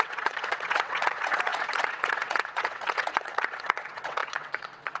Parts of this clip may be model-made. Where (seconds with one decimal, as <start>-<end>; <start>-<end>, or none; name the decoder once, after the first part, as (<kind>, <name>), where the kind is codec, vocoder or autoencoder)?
0.0-5.0 (vocoder, WaveNeXt)